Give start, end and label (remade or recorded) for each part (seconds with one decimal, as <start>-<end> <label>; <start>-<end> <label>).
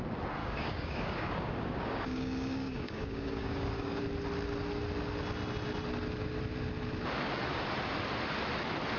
0.0-0.4 recorded; 0.4-4.0 remade; 4.0-9.0 recorded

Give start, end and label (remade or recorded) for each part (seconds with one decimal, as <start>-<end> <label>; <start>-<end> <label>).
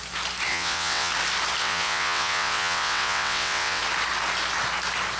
0.0-0.5 recorded; 0.5-1.1 remade; 1.1-1.6 recorded; 1.6-3.8 remade; 3.8-5.2 recorded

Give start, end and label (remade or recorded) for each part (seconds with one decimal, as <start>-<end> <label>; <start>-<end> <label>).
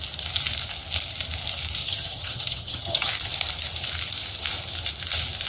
0.0-1.8 recorded; 1.8-3.1 remade; 3.1-5.5 recorded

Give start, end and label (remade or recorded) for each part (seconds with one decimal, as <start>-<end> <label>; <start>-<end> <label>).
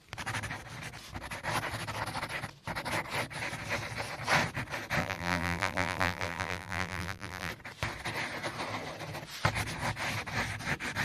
0.0-5.0 recorded; 5.0-7.5 remade; 7.5-11.0 recorded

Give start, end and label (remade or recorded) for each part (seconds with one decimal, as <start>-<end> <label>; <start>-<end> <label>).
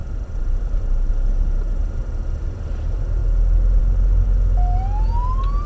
0.0-1.1 remade; 1.1-1.8 recorded; 1.8-2.3 remade; 2.3-3.2 recorded; 3.2-3.8 remade; 3.8-5.7 recorded